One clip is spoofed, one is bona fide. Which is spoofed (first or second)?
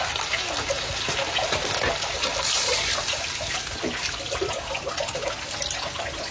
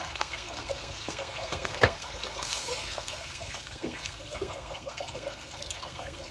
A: second